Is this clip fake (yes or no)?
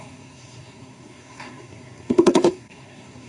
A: yes